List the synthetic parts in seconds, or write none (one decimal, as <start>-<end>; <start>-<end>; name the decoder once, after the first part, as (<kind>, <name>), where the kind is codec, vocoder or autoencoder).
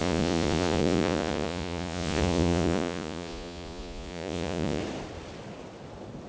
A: 0.0-4.8 (vocoder, Vocos)